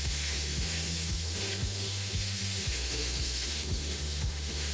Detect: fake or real fake